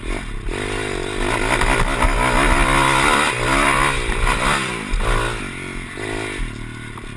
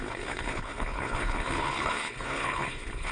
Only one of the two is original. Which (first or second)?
first